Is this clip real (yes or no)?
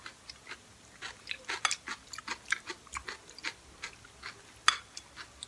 yes